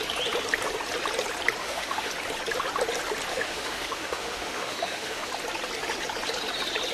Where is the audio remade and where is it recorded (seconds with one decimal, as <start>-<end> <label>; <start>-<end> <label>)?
0.0-1.6 recorded; 1.6-2.1 remade; 2.1-3.3 recorded; 3.3-5.3 remade; 5.3-6.9 recorded